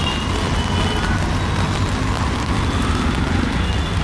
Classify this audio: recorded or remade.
recorded